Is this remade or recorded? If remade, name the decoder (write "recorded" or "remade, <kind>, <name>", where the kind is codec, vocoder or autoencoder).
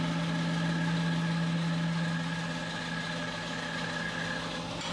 recorded